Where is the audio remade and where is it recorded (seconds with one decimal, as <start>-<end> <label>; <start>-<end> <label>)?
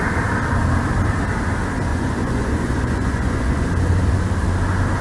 0.0-1.9 recorded; 1.9-3.7 remade; 3.7-5.0 recorded